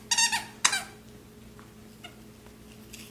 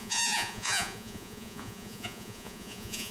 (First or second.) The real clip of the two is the first